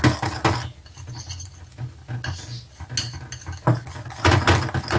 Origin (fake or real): real